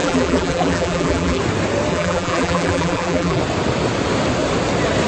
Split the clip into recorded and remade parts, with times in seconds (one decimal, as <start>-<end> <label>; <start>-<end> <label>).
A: 0.0-1.4 remade; 1.4-1.9 recorded; 1.9-3.4 remade; 3.4-5.1 recorded